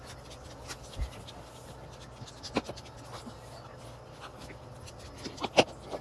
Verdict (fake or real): real